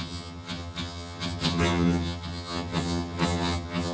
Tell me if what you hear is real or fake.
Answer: fake